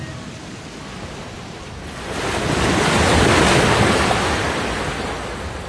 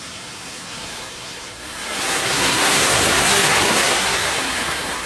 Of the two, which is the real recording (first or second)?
first